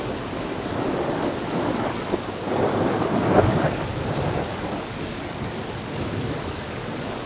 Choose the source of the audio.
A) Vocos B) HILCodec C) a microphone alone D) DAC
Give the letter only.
D